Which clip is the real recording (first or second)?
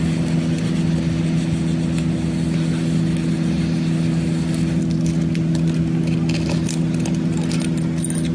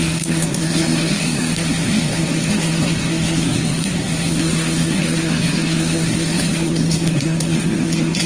first